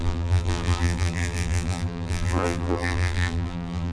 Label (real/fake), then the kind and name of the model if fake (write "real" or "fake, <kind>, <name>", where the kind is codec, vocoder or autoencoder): fake, vocoder, BigVGAN v2